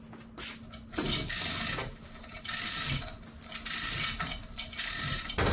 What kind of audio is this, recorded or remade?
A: recorded